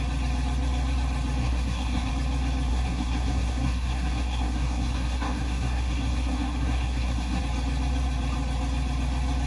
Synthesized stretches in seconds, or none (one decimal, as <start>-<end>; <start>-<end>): 1.4-2.1; 2.7-7.4

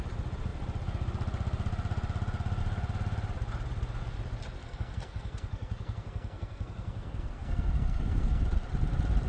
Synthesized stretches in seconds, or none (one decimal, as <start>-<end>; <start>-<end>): 4.6-8.4

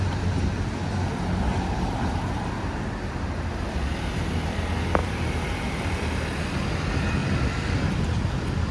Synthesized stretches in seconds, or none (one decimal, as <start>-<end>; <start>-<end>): 5.0-6.4; 7.2-8.0

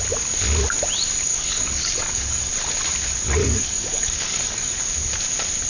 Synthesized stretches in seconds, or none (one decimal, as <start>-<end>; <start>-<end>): 1.3-2.5; 3.4-4.8

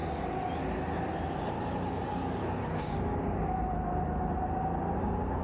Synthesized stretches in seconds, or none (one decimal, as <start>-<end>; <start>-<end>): 1.9-2.4

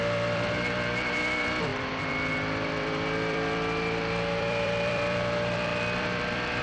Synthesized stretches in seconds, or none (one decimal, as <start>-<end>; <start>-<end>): 0.0-6.6

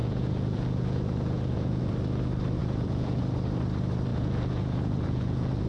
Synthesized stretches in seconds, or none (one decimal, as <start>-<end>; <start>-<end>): 0.0-1.8; 2.6-3.2; 4.1-5.7

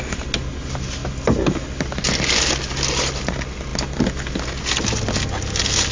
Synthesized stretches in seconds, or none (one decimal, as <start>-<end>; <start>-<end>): none